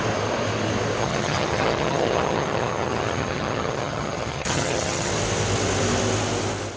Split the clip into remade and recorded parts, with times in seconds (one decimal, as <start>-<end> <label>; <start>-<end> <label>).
0.0-1.0 recorded; 1.0-5.1 remade; 5.1-6.8 recorded